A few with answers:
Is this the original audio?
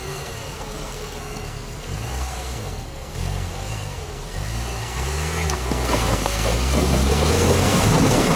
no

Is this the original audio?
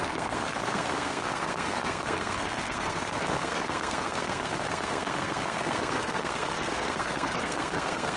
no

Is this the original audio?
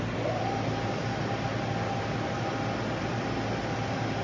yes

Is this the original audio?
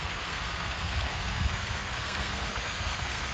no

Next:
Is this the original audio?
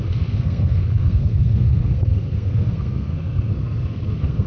no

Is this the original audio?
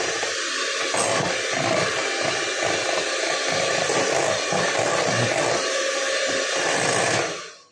yes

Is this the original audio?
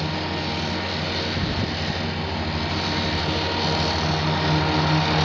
yes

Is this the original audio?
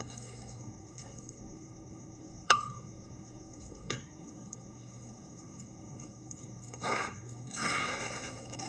no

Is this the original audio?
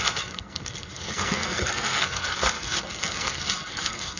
no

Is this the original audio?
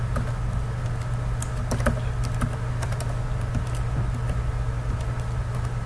yes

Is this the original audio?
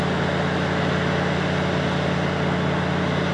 yes